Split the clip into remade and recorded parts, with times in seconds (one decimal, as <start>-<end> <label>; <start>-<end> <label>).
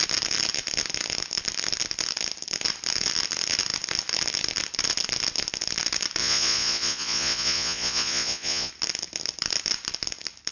0.0-6.2 recorded; 6.2-8.7 remade; 8.7-10.5 recorded